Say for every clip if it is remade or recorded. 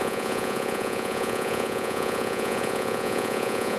remade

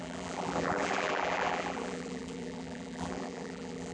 remade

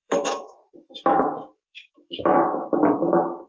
remade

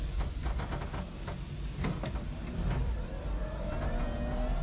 recorded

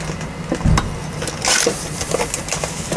recorded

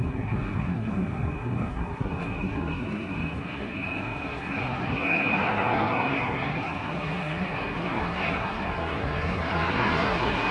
remade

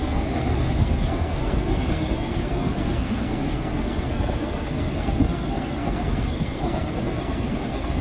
remade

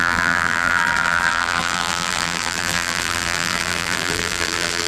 remade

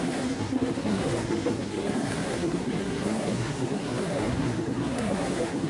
remade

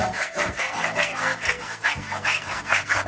remade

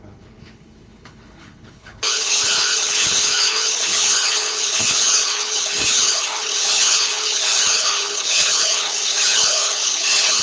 remade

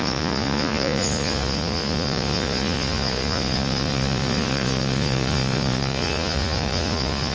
remade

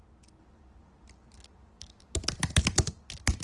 recorded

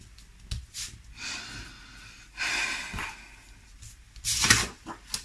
recorded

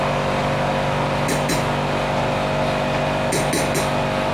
recorded